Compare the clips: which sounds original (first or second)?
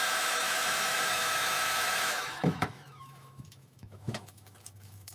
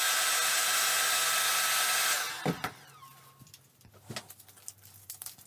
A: second